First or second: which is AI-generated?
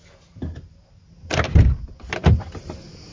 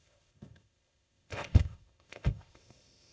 second